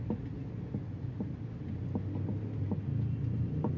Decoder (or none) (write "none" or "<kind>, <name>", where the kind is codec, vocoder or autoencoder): none